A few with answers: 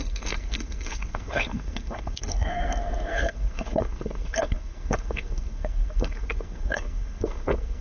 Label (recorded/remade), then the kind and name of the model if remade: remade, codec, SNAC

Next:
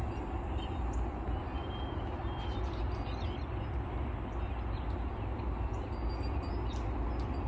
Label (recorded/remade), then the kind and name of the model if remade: recorded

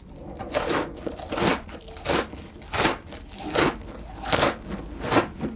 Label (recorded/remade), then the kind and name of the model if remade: recorded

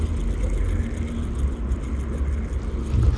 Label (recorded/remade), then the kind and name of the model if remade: recorded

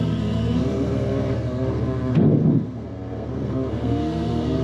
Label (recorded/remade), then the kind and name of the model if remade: remade, codec, SNAC